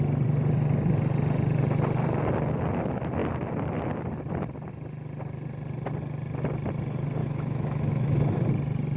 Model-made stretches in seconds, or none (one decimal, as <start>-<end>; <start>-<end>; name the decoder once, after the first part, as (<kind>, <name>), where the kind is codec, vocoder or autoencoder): 7.2-8.5 (autoencoder, DAC-VAE)